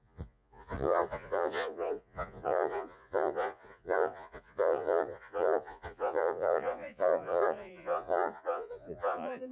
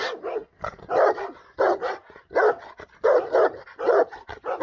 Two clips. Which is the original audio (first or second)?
second